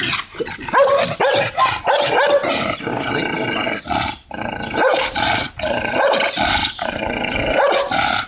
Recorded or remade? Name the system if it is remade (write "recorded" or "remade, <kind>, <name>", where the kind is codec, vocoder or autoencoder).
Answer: recorded